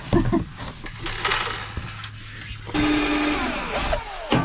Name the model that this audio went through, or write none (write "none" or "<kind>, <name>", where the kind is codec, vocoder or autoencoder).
none